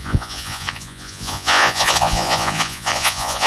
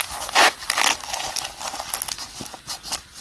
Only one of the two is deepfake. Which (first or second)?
first